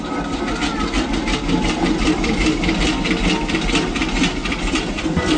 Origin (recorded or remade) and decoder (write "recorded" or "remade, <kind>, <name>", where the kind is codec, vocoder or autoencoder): recorded